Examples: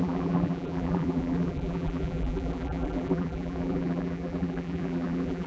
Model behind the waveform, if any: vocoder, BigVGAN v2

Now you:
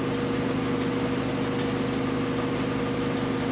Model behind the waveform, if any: none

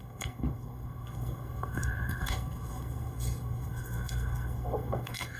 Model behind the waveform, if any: codec, SNAC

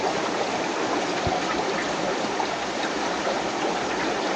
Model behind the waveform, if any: none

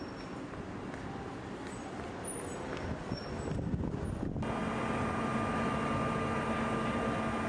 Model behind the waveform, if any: none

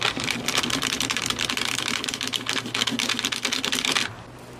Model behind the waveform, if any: none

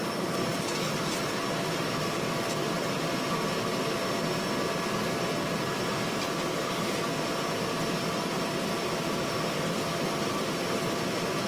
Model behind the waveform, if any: vocoder, BigVGAN v2